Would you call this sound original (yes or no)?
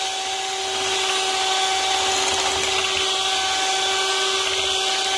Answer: yes